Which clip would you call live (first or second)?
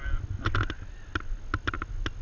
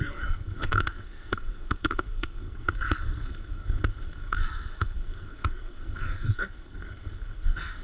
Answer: first